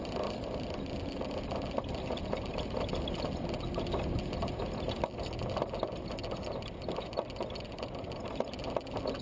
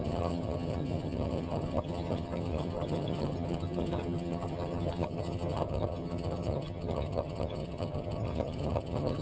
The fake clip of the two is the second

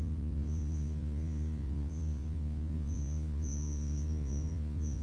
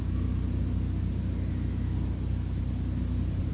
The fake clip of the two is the first